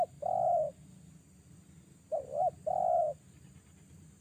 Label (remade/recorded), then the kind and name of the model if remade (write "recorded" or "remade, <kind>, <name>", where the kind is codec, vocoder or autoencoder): recorded